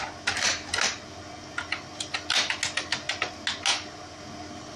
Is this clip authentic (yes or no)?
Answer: yes